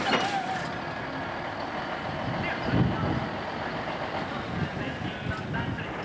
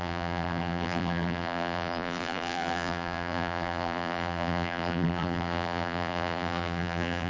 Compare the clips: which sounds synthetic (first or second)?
second